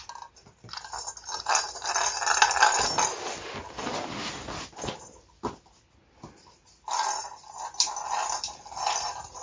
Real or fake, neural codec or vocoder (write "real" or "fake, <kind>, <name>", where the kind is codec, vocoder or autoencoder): real